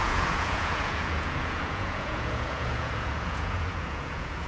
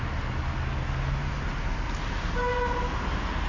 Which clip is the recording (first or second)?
second